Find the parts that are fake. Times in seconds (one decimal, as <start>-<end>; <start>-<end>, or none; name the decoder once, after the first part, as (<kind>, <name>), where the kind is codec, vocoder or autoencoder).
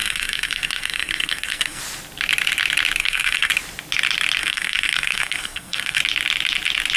0.0-1.8 (codec, SNAC); 3.0-3.5; 4.4-6.0